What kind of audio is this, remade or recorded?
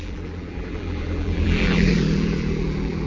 remade